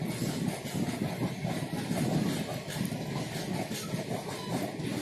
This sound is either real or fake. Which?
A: real